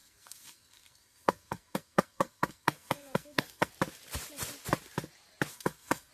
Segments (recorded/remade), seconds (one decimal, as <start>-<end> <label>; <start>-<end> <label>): 0.0-3.7 remade; 3.7-5.5 recorded; 5.5-6.1 remade